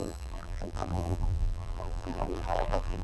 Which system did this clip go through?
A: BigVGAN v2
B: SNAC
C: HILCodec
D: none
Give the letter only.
A